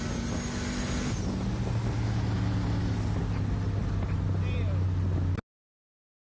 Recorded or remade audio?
recorded